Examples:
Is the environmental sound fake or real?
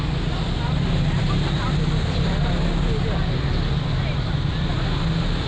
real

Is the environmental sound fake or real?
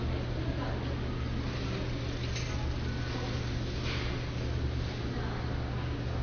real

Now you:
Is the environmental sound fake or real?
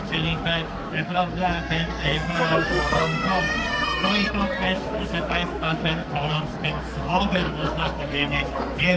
fake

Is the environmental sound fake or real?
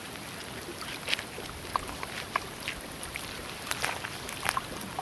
real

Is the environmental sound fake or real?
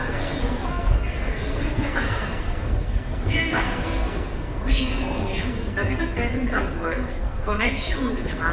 fake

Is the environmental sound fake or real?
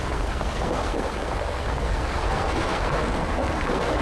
fake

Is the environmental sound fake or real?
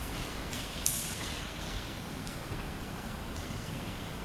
fake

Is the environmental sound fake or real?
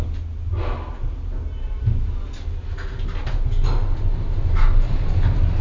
real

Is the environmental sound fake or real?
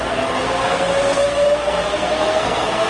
fake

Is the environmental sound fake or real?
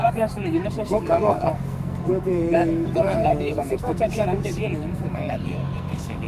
fake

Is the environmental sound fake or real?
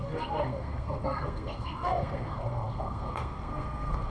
fake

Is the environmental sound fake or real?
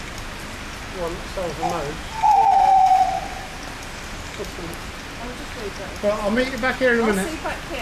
real